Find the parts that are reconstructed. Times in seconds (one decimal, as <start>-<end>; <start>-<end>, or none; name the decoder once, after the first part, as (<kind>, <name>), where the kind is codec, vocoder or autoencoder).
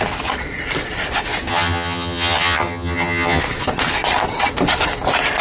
1.5-3.4 (vocoder, HiFi-GAN)